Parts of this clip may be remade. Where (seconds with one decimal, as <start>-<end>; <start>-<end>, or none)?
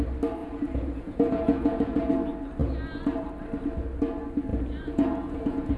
0.4-2.1; 4.5-5.8